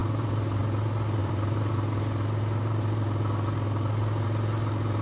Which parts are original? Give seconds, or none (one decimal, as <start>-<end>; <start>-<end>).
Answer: 0.6-1.2; 1.7-5.0

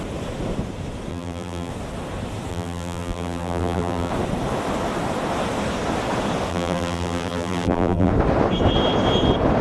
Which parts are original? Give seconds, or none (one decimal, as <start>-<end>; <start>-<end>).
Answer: 0.0-1.1; 1.7-2.5; 4.1-6.5; 8.1-9.6